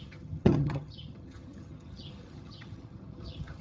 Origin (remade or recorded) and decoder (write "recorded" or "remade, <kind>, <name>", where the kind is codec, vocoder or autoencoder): remade, vocoder, HiFi-GAN